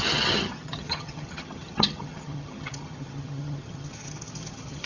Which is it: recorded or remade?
remade